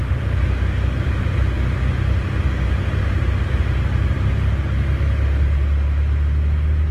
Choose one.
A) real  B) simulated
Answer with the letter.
A